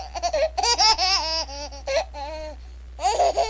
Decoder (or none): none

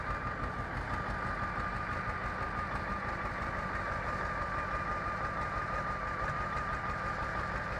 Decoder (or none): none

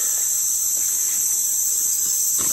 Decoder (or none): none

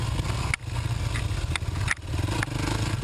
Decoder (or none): none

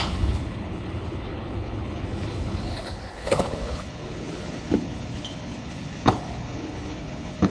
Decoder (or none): codec, HILCodec